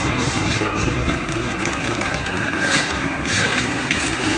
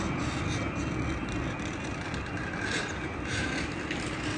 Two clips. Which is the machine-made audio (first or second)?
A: first